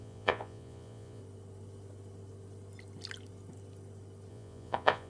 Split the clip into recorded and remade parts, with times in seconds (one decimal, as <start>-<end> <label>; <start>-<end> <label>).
0.0-1.2 remade; 1.2-4.3 recorded; 4.3-5.1 remade

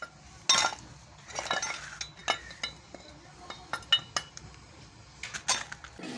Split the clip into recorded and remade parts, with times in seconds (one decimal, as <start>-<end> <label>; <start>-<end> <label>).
0.0-6.2 recorded

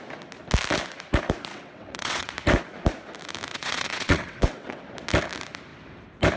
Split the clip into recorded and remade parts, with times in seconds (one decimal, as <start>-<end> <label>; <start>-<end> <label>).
0.0-1.5 recorded; 1.5-2.3 remade; 2.3-3.5 recorded; 3.5-4.8 remade; 4.8-6.4 recorded

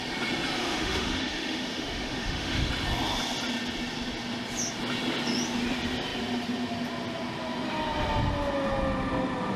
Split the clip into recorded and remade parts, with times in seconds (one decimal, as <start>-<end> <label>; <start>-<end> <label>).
0.0-0.6 recorded; 0.6-2.7 remade; 2.7-9.6 recorded

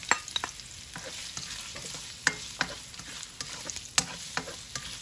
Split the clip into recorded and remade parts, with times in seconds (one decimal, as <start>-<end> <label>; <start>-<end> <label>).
0.0-5.0 recorded

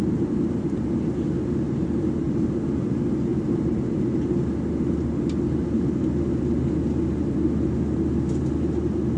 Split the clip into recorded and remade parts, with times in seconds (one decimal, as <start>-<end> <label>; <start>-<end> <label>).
0.0-9.2 recorded

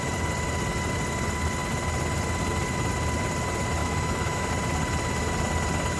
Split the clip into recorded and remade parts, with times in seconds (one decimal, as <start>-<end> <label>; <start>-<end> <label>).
0.0-3.8 recorded; 3.8-4.5 remade; 4.5-6.0 recorded

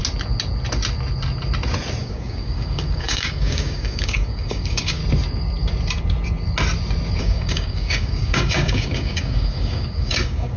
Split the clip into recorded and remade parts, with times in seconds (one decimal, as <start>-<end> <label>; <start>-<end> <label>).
0.0-2.0 recorded; 2.0-5.0 remade; 5.0-7.2 recorded; 7.2-10.6 remade